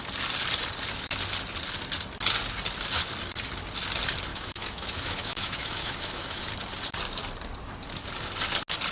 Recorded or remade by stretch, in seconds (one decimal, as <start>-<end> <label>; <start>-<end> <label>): 0.0-4.3 recorded; 4.3-6.4 remade; 6.4-8.9 recorded